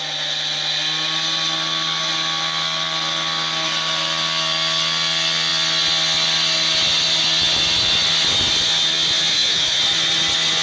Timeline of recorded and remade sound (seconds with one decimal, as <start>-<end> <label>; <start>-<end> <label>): 0.0-9.3 recorded; 9.3-9.8 remade; 9.8-10.6 recorded